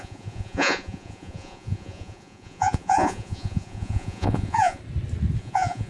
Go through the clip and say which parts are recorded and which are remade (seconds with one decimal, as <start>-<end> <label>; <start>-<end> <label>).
0.0-4.8 remade; 4.8-5.4 recorded; 5.4-5.9 remade